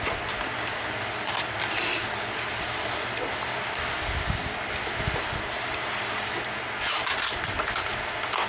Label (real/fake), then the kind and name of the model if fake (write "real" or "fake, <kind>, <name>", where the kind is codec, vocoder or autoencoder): real